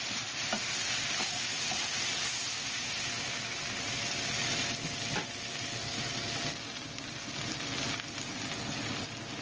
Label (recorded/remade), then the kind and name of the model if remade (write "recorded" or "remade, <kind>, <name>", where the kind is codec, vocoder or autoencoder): recorded